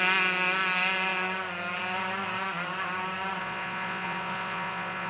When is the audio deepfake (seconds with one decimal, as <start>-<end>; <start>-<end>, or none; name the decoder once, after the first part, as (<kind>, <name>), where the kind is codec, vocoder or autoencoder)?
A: 3.4-5.1 (vocoder, Vocos)